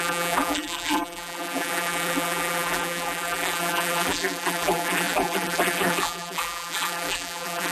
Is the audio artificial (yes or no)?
yes